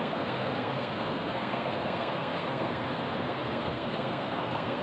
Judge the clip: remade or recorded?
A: remade